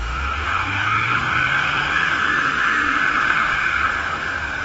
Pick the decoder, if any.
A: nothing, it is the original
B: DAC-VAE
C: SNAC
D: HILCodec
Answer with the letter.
B